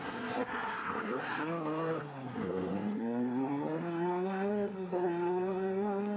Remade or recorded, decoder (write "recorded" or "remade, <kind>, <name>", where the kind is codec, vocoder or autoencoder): remade, codec, SNAC